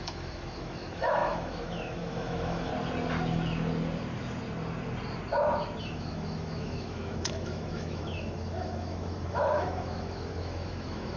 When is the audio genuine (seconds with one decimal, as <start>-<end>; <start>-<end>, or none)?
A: 2.7-5.8